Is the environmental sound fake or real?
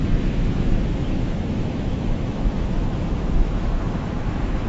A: fake